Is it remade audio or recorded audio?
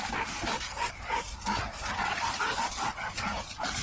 recorded